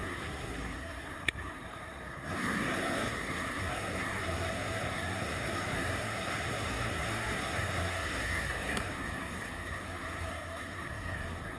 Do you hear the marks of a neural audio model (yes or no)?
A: yes